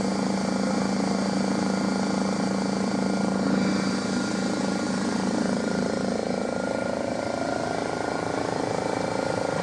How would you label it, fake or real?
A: real